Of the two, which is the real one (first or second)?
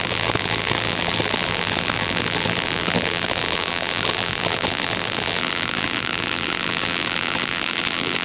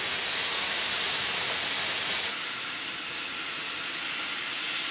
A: second